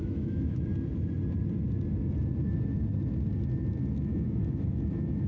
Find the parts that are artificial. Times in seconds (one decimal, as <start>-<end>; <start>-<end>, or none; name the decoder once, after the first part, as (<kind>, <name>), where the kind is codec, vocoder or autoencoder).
0.0-0.7 (autoencoder, DAC-VAE); 3.9-5.3